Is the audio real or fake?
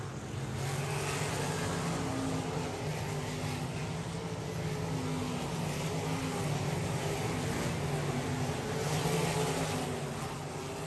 real